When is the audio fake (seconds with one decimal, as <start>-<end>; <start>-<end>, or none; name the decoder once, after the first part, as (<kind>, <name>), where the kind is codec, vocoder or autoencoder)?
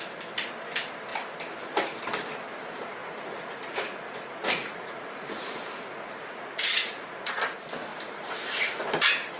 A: 3.0-7.4 (vocoder, Vocos); 7.9-8.9